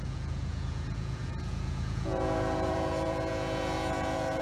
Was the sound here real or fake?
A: fake